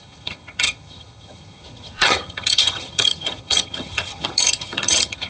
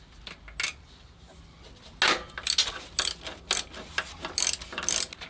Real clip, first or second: second